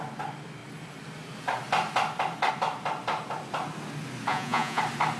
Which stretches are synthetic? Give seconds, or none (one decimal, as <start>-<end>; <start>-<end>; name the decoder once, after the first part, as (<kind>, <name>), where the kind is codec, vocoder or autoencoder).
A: 4.3-4.8 (vocoder, Vocos)